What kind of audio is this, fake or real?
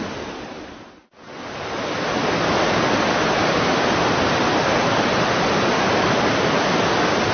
real